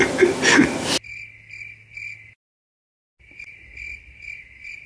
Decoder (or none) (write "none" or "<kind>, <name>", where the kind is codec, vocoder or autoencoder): none